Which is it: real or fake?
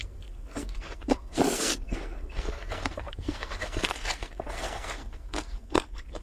fake